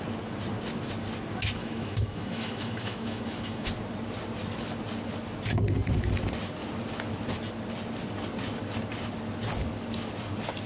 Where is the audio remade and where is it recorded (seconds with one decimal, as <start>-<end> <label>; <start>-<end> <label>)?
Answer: 0.0-1.6 recorded; 1.6-3.7 remade; 3.7-10.7 recorded